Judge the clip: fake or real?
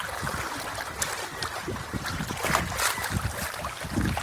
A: real